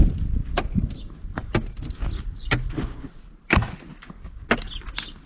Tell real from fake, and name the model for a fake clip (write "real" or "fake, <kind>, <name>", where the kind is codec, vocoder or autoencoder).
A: real